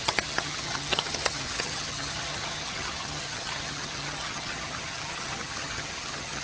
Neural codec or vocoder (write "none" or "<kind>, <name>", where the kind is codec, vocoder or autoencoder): vocoder, HiFi-GAN